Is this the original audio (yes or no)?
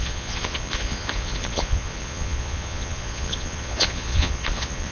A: no